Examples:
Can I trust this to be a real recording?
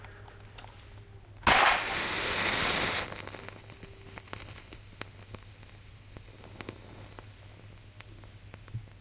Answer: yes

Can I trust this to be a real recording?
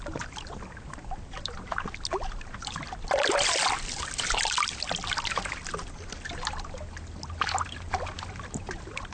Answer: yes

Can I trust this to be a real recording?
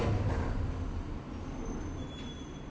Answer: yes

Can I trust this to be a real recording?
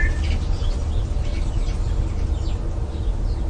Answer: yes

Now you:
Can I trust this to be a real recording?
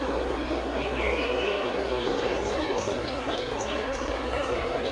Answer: no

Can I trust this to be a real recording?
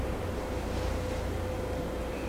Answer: no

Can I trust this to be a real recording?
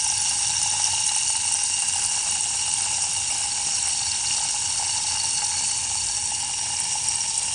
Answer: yes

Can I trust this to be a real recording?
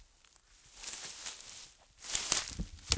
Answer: yes